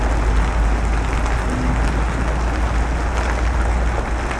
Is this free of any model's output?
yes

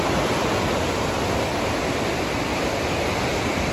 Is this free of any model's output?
yes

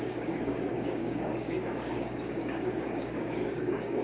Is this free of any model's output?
no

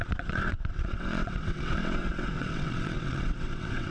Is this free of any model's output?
no